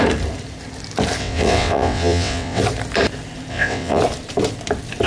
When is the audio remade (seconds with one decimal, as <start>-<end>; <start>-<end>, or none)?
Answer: 1.2-2.6; 3.5-4.0